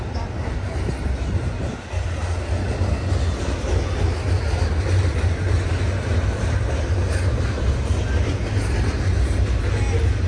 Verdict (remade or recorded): recorded